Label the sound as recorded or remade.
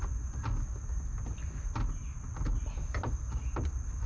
recorded